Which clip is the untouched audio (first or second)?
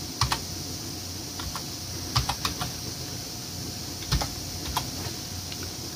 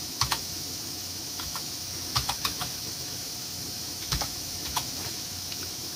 first